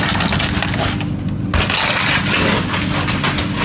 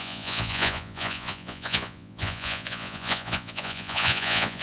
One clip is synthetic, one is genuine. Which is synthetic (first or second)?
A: second